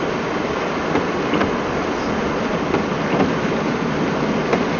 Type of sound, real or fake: real